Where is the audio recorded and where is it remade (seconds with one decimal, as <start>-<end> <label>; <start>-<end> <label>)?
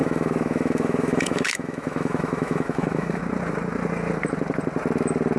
0.0-3.2 remade; 3.2-5.4 recorded